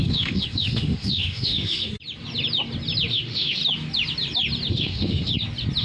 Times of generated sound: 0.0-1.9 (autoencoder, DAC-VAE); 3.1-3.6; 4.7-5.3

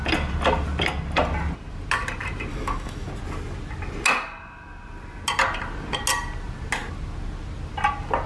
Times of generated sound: 2.5-3.1 (autoencoder, DAC-VAE)

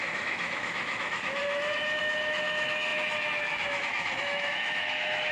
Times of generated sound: 0.0-5.3 (autoencoder, DAC-VAE)